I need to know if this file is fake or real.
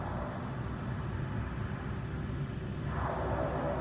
real